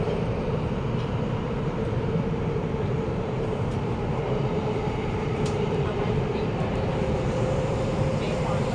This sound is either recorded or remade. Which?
remade